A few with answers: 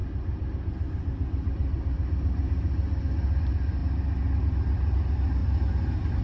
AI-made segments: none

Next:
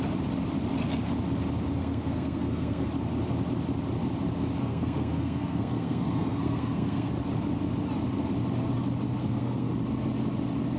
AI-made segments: 1.8-2.9 (codec, SNAC); 4.6-7.1; 9.2-9.7

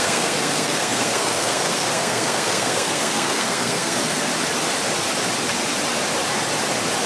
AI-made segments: 0.0-4.3 (codec, SNAC)

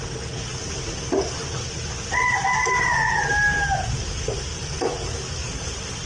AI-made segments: none

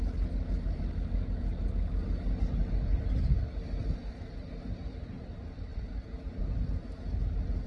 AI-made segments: none

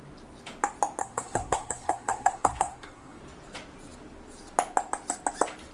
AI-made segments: 1.0-3.2 (codec, SNAC)

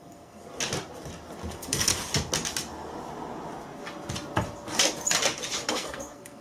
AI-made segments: 0.0-0.4 (codec, SNAC); 1.5-1.9; 5.7-6.4

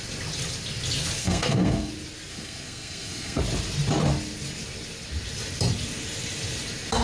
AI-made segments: 1.2-1.9 (codec, SNAC); 2.3-3.4